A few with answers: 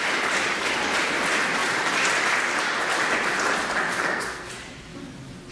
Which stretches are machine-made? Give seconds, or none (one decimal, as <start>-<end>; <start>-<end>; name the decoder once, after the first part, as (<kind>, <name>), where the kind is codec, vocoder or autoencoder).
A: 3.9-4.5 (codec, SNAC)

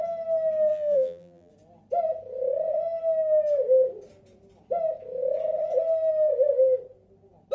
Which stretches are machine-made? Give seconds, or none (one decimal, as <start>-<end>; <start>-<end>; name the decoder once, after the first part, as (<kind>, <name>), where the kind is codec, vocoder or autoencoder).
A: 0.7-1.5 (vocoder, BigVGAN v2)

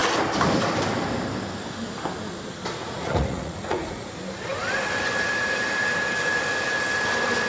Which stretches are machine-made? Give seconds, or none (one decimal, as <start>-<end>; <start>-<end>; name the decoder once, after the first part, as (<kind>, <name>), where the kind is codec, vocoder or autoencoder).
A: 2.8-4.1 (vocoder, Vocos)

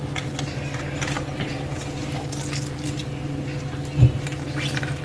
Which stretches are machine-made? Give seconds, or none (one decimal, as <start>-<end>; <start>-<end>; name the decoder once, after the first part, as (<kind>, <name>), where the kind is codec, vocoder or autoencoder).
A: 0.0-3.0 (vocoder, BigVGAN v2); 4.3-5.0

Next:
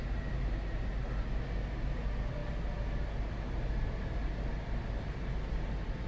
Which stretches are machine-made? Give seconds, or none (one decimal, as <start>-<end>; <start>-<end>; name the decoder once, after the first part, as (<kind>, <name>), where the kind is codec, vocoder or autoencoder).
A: none